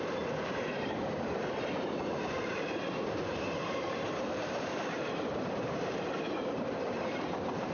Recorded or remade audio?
remade